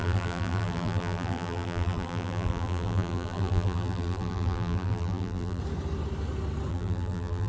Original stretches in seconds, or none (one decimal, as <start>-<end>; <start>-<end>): 5.6-6.7